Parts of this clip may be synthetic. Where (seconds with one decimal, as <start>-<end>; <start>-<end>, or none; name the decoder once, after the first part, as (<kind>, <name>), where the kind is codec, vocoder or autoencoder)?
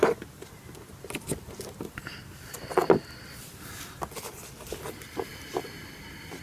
none